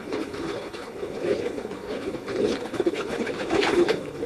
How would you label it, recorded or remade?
remade